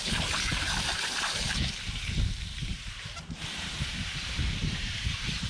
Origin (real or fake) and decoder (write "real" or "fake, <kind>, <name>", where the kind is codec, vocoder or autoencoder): fake, vocoder, BigVGAN v2